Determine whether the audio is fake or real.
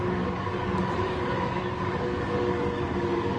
fake